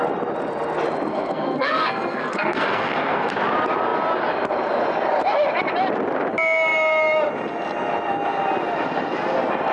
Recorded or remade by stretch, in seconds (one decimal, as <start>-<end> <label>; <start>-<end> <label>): 0.0-1.1 recorded; 1.1-3.3 remade; 3.3-9.7 recorded